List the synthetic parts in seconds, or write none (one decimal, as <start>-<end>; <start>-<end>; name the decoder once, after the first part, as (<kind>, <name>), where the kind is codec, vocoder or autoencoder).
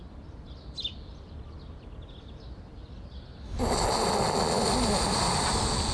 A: none